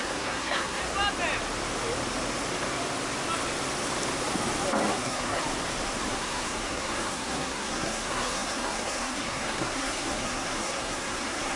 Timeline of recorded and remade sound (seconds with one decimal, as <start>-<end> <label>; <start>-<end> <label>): 0.0-0.8 remade; 0.8-4.9 recorded; 4.9-5.4 remade; 5.4-6.1 recorded; 6.1-11.6 remade